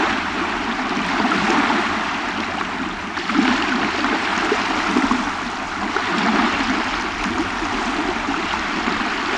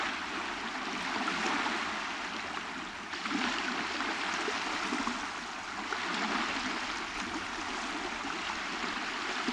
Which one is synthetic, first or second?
first